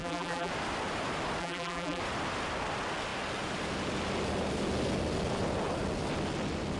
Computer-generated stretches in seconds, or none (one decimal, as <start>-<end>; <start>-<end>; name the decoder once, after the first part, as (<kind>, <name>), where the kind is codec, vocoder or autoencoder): 0.0-0.5 (vocoder, BigVGAN v2); 1.4-2.0